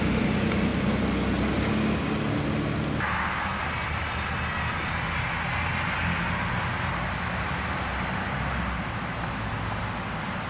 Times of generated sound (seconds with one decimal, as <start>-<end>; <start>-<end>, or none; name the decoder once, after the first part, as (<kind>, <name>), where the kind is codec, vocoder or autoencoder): none